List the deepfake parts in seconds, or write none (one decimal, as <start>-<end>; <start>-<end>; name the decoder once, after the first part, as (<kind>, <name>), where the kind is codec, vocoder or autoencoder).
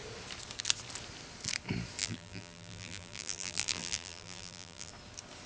2.0-4.9 (vocoder, BigVGAN v2)